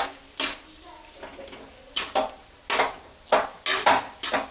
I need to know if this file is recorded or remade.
recorded